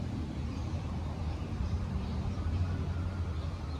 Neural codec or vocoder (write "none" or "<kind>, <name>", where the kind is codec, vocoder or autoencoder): none